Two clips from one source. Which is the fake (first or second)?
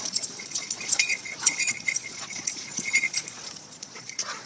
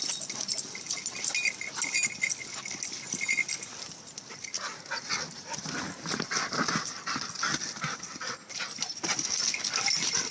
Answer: first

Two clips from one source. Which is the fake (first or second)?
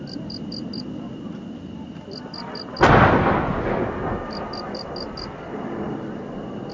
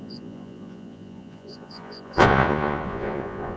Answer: second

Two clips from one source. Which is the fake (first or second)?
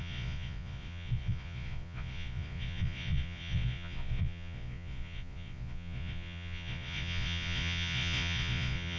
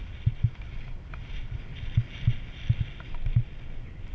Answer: first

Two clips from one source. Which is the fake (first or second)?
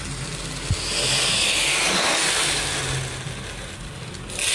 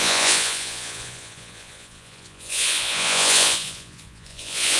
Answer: second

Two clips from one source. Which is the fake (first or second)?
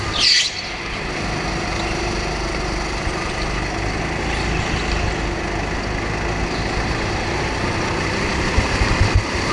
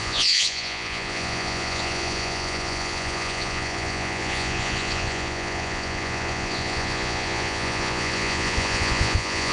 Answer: second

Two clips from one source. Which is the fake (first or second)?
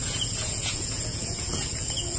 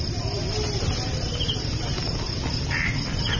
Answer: first